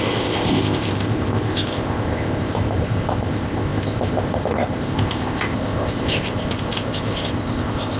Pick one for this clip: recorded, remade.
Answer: remade